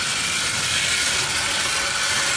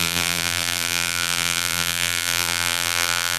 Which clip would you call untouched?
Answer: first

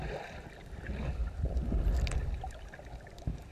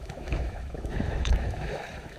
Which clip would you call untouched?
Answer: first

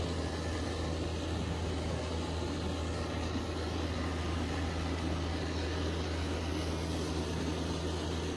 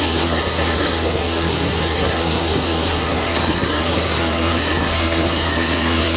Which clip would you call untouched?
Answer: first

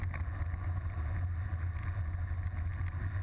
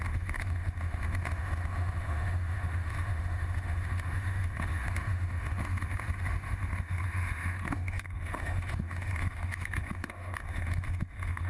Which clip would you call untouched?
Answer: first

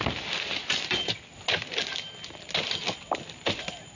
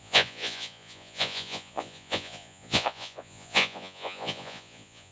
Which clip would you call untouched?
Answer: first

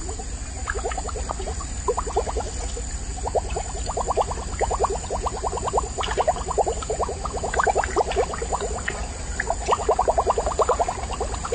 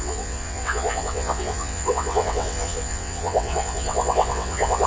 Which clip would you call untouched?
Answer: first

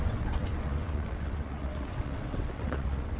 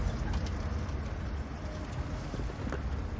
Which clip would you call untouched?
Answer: second